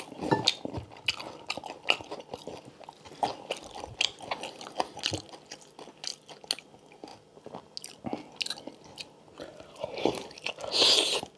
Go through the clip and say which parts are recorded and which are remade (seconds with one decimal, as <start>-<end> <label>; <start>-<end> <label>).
0.0-11.4 recorded